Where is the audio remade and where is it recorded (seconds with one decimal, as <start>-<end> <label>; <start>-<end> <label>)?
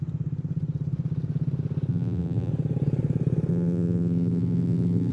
0.0-1.9 recorded; 1.9-2.5 remade; 2.5-3.5 recorded; 3.5-5.1 remade